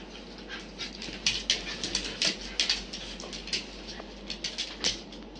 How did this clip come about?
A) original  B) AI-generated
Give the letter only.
A